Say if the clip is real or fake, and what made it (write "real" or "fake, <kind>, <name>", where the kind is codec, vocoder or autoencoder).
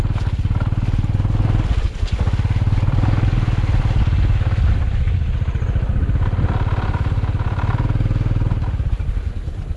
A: real